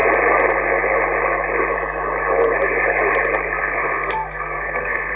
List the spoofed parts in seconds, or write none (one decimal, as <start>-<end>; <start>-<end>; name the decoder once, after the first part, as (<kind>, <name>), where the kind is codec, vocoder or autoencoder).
3.6-5.2 (codec, SNAC)